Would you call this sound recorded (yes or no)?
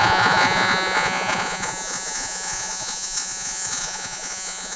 no